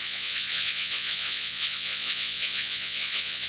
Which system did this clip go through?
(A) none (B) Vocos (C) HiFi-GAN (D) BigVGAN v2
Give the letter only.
B